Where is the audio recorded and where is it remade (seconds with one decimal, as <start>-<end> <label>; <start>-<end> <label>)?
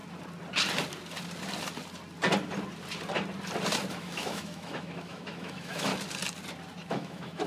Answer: 0.0-3.9 recorded; 3.9-5.9 remade; 5.9-6.9 recorded; 6.9-7.5 remade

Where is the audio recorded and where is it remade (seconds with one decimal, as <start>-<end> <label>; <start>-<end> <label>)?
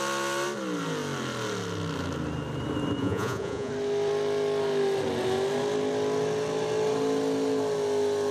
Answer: 0.0-3.0 recorded; 3.0-3.7 remade; 3.7-8.3 recorded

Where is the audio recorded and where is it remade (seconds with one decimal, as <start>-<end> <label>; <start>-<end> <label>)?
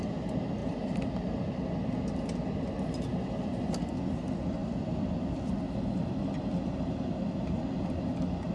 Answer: 0.0-0.6 recorded; 0.6-1.4 remade; 1.4-4.6 recorded; 4.6-6.2 remade; 6.2-8.5 recorded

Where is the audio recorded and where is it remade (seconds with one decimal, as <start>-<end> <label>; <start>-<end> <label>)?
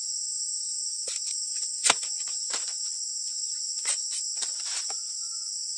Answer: 0.0-5.8 recorded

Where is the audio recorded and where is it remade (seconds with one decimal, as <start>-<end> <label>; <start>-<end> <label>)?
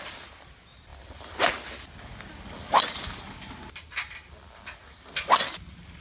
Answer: 0.0-6.0 recorded